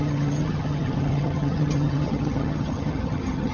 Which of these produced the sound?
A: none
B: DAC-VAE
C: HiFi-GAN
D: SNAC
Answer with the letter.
C